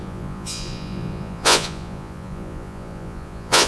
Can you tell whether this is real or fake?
fake